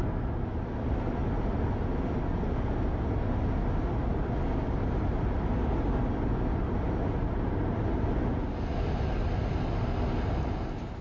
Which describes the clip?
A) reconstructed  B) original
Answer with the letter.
B